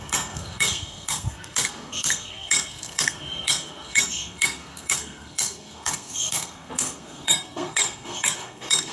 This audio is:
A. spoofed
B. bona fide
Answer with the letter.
A